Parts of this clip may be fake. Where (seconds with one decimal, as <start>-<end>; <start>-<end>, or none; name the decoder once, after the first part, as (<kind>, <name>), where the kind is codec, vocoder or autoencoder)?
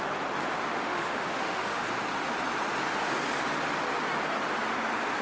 0.7-1.8 (autoencoder, DAC-VAE)